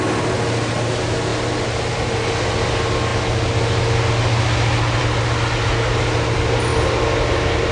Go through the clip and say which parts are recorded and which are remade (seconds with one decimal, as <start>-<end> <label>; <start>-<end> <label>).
0.0-7.7 recorded